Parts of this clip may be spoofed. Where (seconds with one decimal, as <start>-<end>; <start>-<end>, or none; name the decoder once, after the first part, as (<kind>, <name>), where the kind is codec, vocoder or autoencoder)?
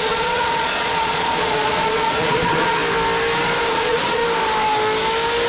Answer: 0.0-2.8 (vocoder, Vocos); 3.7-4.2